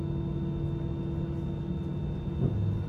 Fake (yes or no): no